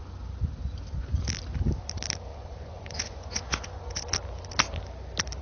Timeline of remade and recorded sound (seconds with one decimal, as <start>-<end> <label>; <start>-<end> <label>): 0.0-2.3 recorded; 2.3-4.1 remade; 4.1-5.4 recorded